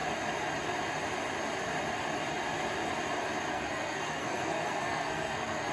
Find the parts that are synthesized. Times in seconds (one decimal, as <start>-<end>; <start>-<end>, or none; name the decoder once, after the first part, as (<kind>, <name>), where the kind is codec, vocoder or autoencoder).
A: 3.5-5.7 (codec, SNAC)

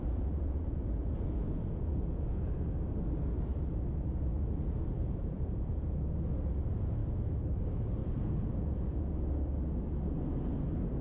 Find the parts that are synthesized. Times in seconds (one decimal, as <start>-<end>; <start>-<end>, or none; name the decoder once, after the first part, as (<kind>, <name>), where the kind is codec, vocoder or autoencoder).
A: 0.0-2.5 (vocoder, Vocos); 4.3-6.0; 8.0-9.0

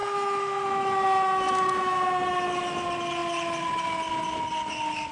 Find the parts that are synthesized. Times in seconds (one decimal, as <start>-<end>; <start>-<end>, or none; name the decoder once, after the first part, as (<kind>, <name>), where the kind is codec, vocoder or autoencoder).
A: 0.0-2.8 (autoencoder, DAC-VAE)

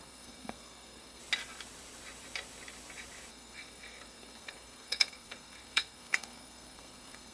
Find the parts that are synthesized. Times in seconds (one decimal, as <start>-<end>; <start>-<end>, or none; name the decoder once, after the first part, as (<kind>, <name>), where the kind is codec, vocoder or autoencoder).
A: 0.0-1.2 (codec, SNAC); 3.3-7.3

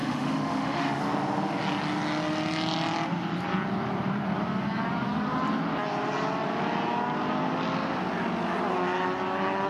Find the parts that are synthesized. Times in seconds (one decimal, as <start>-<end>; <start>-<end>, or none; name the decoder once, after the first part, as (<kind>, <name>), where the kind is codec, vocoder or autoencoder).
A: 0.0-1.0 (autoencoder, DAC-VAE)